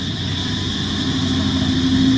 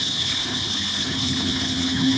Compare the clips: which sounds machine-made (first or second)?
second